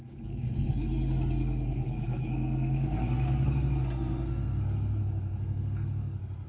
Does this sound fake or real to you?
fake